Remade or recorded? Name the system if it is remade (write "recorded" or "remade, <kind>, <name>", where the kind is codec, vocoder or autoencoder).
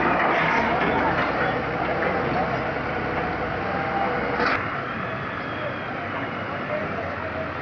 recorded